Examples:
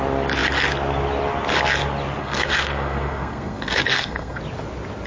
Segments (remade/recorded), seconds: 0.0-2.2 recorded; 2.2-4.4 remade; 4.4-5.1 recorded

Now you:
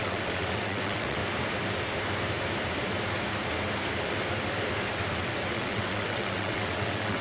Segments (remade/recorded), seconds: 0.0-1.2 remade; 1.2-5.5 recorded; 5.5-7.2 remade

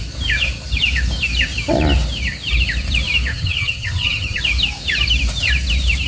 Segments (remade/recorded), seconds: 0.0-3.3 recorded; 3.3-4.4 remade; 4.4-6.1 recorded

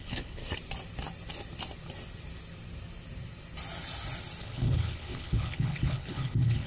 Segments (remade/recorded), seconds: 0.0-0.4 remade; 0.4-4.4 recorded; 4.4-6.7 remade